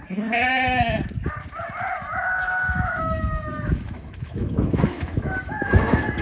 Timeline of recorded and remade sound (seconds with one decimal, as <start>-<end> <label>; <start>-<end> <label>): 0.0-2.4 recorded; 2.4-6.2 remade